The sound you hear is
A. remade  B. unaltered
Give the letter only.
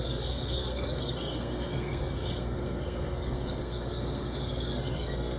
A